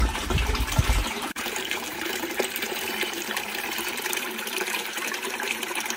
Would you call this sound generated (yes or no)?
yes